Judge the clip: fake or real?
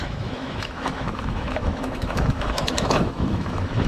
fake